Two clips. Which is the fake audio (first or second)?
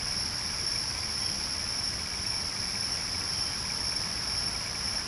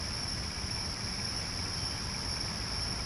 first